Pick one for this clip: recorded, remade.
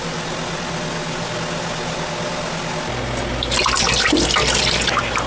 recorded